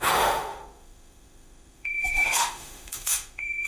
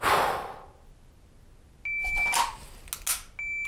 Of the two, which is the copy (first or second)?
first